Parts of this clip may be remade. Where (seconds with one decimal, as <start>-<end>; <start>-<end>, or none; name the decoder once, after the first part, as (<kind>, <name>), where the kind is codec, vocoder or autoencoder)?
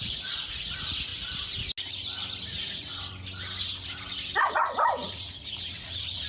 0.0-1.1 (vocoder, Vocos); 2.4-2.9; 4.5-6.3